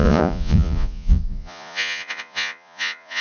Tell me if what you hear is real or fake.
fake